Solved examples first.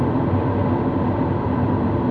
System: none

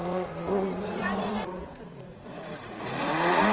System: vocoder, Vocos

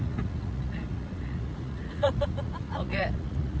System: vocoder, Vocos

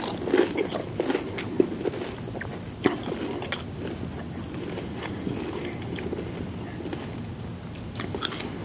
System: none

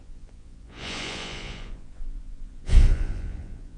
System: vocoder, Vocos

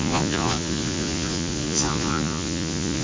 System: vocoder, Vocos